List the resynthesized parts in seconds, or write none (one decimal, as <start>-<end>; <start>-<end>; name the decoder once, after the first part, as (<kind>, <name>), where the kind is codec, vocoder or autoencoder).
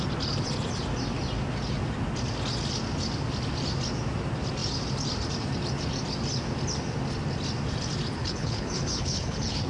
8.2-9.7 (codec, HILCodec)